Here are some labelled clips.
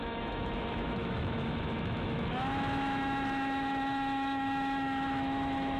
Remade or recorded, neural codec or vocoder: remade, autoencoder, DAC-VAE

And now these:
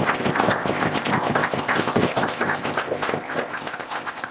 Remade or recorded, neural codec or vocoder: remade, codec, ZipCodec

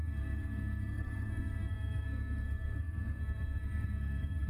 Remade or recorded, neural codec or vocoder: remade, codec, SNAC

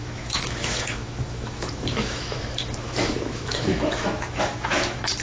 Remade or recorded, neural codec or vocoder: remade, autoencoder, DAC-VAE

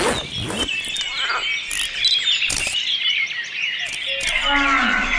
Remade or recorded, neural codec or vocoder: recorded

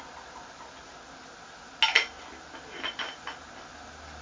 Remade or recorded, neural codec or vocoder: recorded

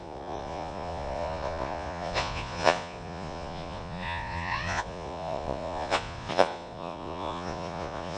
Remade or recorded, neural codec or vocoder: remade, vocoder, Vocos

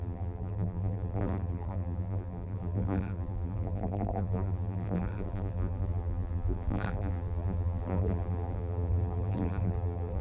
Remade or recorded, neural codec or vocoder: remade, vocoder, BigVGAN v2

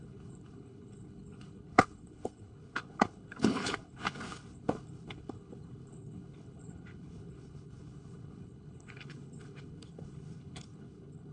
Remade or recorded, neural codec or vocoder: remade, codec, HILCodec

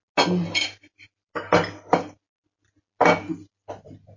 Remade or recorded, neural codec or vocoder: recorded